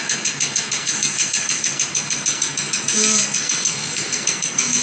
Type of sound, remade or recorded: remade